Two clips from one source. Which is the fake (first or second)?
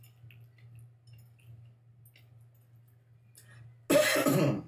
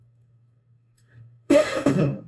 second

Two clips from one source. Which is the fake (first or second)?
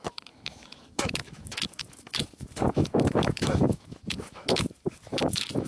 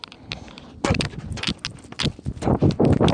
first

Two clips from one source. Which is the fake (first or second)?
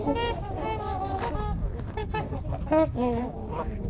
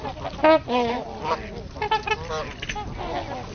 first